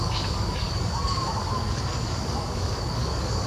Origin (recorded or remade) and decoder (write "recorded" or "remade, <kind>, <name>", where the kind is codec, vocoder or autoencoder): remade, codec, DAC